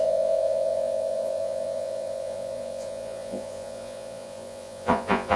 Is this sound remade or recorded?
remade